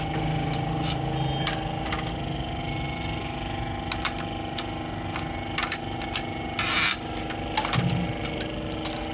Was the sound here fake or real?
real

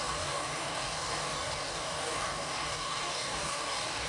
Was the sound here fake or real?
fake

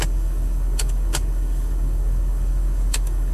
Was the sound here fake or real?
fake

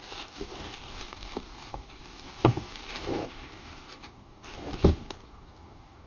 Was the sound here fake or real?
fake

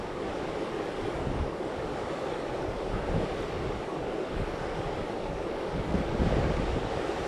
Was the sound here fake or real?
fake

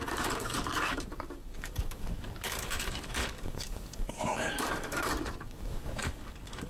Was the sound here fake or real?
fake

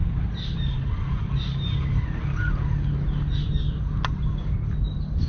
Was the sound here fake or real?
real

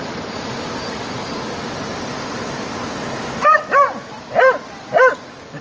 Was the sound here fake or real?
real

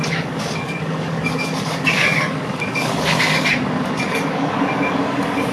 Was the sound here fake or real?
fake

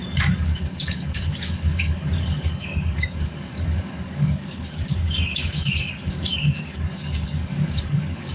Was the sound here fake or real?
fake